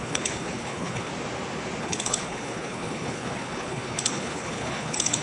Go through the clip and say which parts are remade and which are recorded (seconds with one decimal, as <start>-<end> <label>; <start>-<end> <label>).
0.0-1.1 remade; 1.1-1.8 recorded; 1.8-5.2 remade